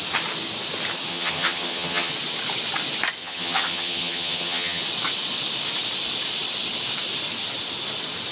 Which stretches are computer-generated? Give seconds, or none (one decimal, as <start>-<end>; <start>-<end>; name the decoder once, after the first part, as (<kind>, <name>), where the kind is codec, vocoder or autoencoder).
1.1-2.1 (vocoder, HiFi-GAN); 3.2-4.8